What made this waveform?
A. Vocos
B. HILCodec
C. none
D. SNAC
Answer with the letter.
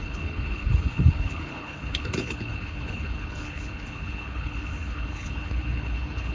B